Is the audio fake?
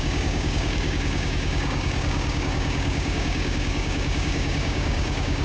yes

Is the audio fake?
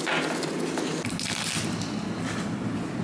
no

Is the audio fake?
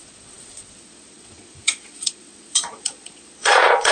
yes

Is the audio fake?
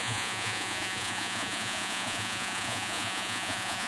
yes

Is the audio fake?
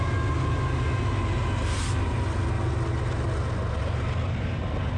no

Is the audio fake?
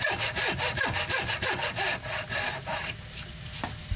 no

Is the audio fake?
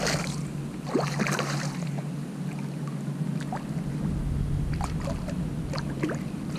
no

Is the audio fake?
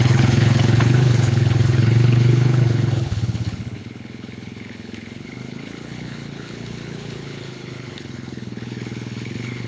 yes